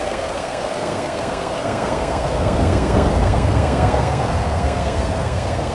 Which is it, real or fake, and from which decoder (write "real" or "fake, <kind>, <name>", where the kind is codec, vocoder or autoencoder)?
fake, codec, SNAC